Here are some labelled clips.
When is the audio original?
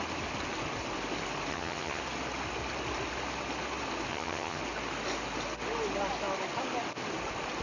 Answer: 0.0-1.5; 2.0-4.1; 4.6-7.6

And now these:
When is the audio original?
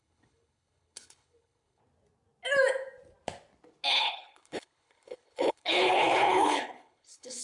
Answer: 1.8-3.9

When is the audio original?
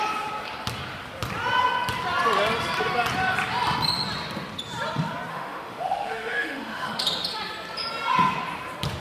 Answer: 0.0-5.3; 7.0-9.0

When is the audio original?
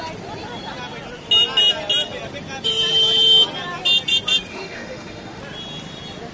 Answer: 0.0-4.5; 5.4-6.3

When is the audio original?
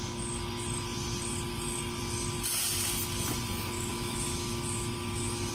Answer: 0.0-3.9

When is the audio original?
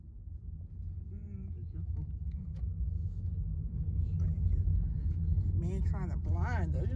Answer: 0.0-1.4; 5.6-7.0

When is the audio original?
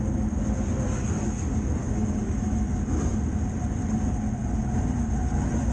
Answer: 0.0-1.8; 2.7-5.7